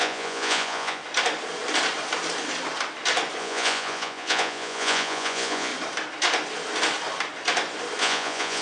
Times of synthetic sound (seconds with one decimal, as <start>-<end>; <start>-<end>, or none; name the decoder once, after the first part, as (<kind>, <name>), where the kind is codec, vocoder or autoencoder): 0.0-1.0 (vocoder, Vocos); 3.4-5.7; 8.0-8.6